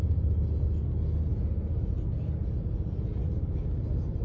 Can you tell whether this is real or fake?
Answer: real